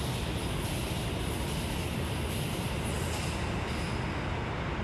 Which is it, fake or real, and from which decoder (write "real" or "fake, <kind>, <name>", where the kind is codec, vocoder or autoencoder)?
real